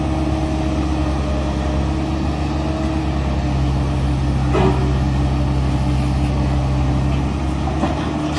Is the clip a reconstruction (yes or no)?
no